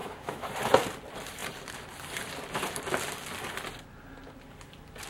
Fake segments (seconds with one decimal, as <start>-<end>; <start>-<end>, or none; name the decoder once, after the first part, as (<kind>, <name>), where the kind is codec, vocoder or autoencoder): 0.0-0.5 (autoencoder, DAC-VAE)